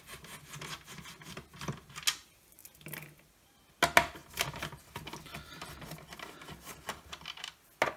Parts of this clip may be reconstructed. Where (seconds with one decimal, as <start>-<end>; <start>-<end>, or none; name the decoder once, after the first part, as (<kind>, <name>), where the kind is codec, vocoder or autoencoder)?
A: none

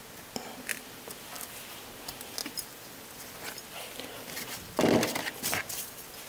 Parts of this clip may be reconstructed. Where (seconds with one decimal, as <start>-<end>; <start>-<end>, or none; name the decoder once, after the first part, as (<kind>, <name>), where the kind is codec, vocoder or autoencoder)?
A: none

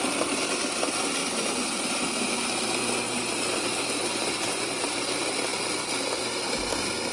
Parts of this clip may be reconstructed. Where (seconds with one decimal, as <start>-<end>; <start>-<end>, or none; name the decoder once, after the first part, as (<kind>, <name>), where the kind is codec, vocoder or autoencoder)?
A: 1.2-1.9 (vocoder, Vocos); 4.0-4.8

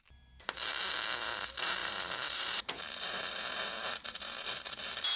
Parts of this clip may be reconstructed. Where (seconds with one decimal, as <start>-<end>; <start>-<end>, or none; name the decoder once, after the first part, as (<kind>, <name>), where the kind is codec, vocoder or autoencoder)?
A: 1.8-4.8 (vocoder, BigVGAN v2)

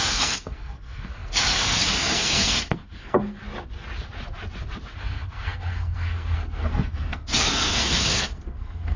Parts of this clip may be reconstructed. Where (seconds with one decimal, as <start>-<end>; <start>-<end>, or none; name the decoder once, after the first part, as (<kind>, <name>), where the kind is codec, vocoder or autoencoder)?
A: 0.0-3.4 (codec, SNAC); 5.0-9.0

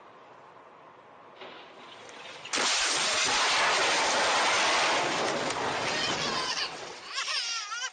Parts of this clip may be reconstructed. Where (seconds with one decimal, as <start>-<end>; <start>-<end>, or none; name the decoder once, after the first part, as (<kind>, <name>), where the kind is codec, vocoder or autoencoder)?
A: 6.3-7.0 (vocoder, WaveNeXt)

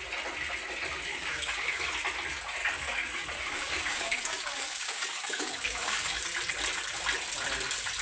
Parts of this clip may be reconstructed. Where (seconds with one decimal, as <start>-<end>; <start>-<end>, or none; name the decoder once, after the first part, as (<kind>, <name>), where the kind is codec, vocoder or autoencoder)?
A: 1.1-1.9 (codec, DAC); 2.6-6.2